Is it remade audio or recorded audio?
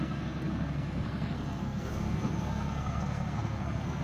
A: remade